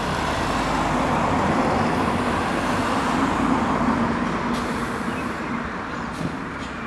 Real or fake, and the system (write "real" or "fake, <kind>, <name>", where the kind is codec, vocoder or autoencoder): real